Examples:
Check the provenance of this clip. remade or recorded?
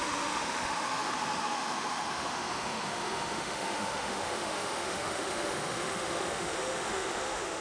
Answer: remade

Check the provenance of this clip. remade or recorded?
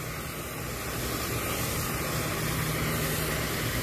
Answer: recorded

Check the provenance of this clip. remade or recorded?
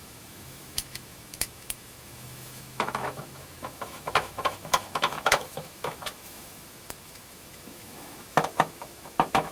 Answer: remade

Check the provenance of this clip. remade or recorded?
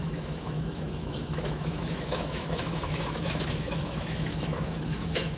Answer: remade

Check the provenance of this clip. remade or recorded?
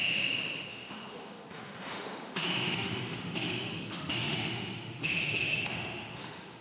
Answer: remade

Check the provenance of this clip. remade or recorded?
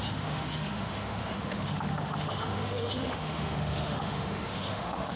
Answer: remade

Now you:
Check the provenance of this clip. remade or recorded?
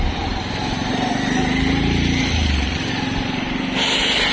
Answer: recorded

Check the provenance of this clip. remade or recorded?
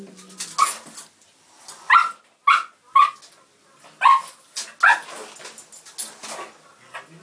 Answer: recorded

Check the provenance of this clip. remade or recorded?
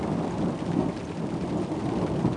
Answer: recorded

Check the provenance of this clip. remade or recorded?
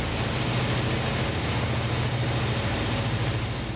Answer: recorded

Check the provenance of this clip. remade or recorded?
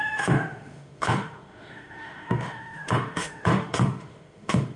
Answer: remade